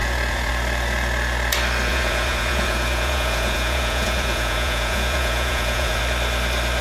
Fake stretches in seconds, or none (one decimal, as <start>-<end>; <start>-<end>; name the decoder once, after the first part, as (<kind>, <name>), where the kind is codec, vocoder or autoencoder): 0.0-0.5 (vocoder, Vocos); 1.9-6.0